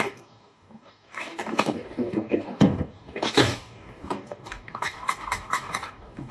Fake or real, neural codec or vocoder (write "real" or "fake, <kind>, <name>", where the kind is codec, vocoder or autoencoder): fake, codec, DAC